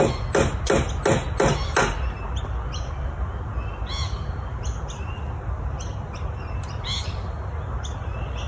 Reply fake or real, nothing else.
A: real